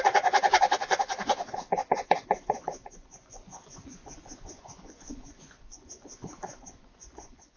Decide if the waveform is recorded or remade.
remade